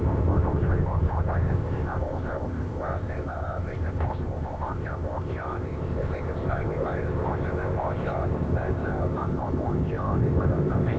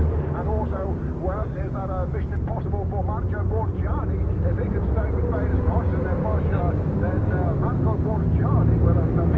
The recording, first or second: second